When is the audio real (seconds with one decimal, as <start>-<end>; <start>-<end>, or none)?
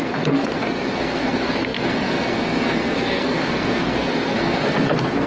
none